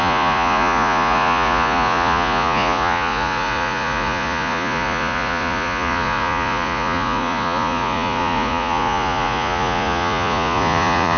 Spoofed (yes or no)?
yes